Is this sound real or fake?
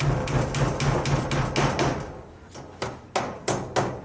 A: real